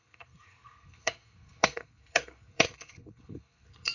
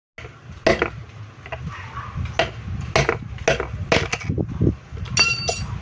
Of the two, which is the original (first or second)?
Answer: second